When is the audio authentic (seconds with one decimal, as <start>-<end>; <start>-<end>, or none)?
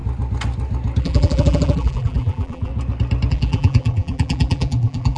0.0-1.0; 2.7-3.3